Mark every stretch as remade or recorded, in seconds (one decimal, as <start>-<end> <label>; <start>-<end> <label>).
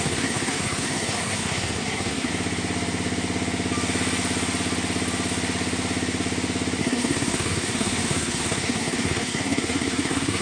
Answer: 0.0-2.3 remade; 2.3-6.8 recorded; 6.8-10.4 remade